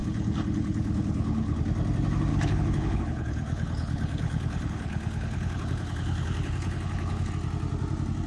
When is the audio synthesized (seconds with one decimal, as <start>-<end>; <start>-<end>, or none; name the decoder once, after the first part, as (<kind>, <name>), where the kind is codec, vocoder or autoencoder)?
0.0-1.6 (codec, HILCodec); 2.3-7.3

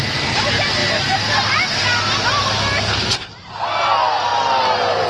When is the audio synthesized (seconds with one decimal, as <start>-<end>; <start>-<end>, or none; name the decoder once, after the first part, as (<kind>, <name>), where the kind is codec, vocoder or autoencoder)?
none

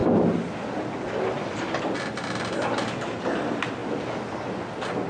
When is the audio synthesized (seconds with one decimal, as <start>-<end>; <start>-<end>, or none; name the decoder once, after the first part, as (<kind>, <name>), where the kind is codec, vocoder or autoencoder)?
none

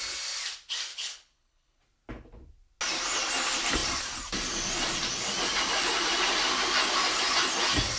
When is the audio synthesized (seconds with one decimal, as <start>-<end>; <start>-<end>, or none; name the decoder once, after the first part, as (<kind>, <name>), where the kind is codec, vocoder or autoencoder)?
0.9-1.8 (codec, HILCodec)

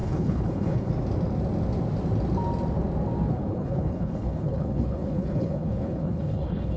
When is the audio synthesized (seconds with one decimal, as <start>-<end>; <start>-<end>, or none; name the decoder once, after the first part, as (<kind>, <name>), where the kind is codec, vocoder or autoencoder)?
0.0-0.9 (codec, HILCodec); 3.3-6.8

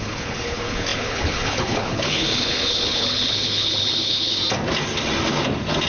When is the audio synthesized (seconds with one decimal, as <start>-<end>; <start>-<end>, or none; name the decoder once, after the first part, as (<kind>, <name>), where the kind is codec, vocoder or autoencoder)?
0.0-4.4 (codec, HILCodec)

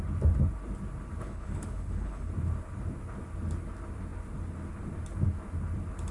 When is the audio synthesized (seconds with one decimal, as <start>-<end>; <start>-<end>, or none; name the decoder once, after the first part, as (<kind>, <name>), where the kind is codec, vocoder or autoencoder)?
1.2-2.3 (codec, HILCodec)

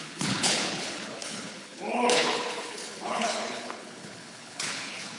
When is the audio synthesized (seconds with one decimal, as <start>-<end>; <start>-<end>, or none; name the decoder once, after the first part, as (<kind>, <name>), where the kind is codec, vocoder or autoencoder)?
0.0-5.2 (codec, HILCodec)